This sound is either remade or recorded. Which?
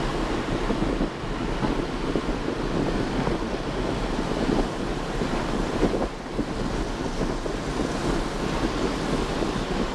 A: recorded